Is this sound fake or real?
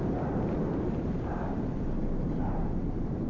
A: fake